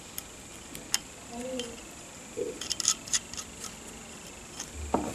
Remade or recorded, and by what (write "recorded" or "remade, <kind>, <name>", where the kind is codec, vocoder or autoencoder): recorded